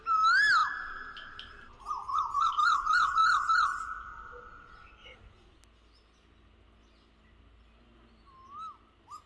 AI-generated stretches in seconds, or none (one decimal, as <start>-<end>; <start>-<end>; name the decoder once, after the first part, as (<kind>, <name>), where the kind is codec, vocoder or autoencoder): none